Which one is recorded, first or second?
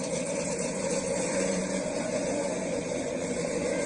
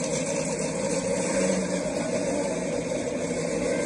second